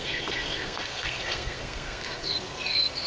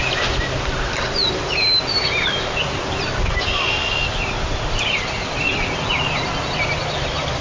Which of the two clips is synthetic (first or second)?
first